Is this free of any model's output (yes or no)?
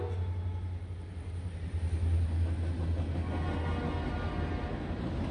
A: yes